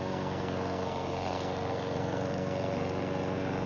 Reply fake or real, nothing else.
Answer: fake